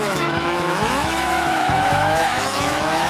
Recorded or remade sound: remade